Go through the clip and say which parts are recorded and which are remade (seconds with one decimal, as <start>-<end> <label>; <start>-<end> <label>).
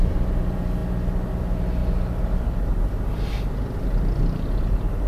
0.0-5.1 recorded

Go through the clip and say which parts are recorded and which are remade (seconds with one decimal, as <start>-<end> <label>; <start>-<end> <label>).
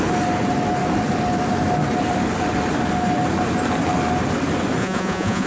0.0-4.8 recorded; 4.8-5.5 remade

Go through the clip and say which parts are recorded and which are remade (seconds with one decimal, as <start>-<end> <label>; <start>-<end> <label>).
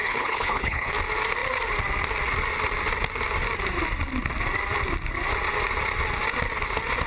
0.0-0.9 remade; 0.9-7.1 recorded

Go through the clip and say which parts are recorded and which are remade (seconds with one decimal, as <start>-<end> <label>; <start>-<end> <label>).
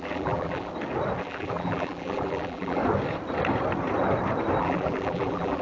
0.0-0.7 remade; 0.7-1.2 recorded; 1.2-2.8 remade; 2.8-4.6 recorded; 4.6-5.6 remade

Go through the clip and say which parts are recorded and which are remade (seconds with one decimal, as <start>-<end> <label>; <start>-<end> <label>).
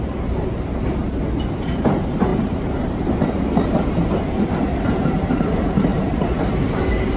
0.0-2.3 recorded; 2.3-4.2 remade; 4.2-5.9 recorded; 5.9-6.5 remade; 6.5-7.2 recorded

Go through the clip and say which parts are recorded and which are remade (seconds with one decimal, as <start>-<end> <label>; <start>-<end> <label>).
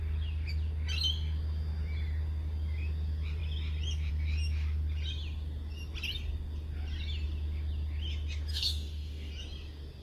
0.0-8.5 recorded; 8.5-9.3 remade; 9.3-10.0 recorded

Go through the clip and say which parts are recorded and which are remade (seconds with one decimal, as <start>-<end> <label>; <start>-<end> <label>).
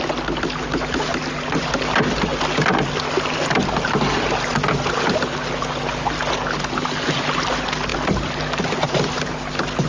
0.0-9.9 recorded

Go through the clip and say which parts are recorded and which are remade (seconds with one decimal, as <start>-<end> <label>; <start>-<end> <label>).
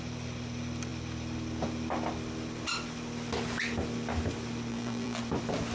0.0-4.7 recorded; 4.7-5.2 remade; 5.2-5.7 recorded